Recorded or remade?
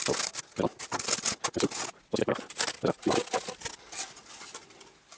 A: recorded